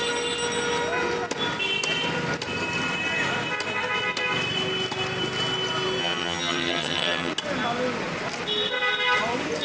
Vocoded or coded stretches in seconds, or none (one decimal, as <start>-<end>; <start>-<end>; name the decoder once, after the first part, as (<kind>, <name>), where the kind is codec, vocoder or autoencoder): 6.0-7.3 (vocoder, HiFi-GAN)